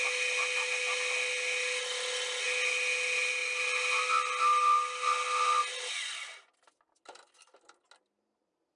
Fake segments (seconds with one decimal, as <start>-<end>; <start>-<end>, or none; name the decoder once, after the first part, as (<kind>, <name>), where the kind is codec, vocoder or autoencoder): none